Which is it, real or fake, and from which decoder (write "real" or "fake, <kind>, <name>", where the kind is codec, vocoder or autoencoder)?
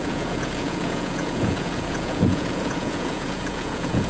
fake, vocoder, Vocos